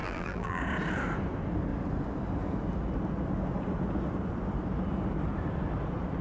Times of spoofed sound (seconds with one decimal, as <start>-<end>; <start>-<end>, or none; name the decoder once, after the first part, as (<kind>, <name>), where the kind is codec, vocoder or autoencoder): 0.0-0.6 (vocoder, BigVGAN v2)